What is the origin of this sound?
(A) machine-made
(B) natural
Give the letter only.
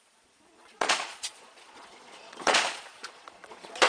A